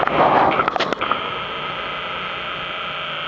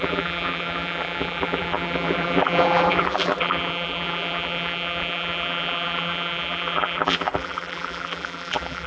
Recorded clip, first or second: first